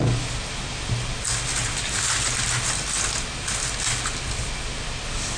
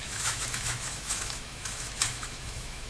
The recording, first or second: first